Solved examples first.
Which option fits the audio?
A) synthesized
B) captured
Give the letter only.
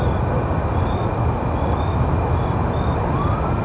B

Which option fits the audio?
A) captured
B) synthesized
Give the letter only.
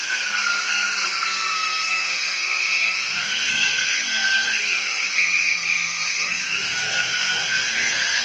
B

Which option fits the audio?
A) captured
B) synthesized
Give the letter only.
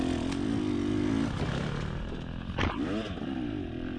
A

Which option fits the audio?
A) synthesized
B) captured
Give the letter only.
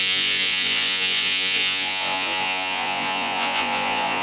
A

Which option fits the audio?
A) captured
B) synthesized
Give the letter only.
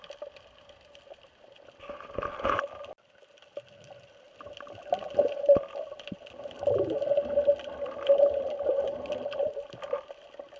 A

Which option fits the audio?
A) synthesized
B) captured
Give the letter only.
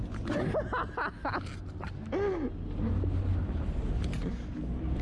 B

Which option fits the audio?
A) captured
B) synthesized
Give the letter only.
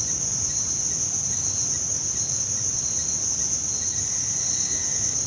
A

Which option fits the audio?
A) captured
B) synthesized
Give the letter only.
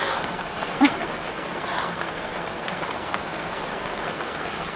B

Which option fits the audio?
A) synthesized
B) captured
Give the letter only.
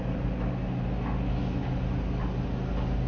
B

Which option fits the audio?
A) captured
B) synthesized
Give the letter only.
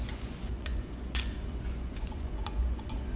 B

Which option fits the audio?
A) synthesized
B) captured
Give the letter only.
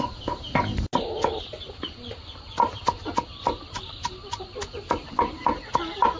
B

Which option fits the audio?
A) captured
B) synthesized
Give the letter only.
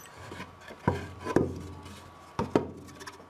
A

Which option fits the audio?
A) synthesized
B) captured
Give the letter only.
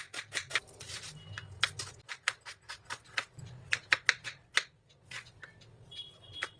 B